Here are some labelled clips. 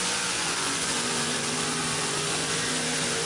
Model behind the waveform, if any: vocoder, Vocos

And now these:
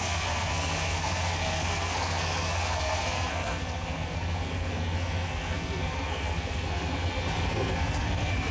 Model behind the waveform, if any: codec, SNAC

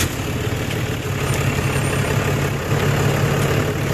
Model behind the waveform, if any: none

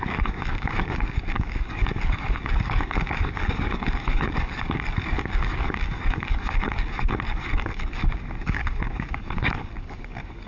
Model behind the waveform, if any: codec, DAC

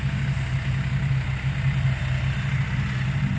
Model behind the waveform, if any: none